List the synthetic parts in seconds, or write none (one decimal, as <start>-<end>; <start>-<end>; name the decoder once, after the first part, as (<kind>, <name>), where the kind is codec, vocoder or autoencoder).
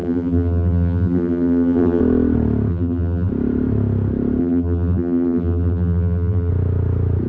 0.0-2.0 (vocoder, BigVGAN v2); 2.7-3.3; 4.4-6.5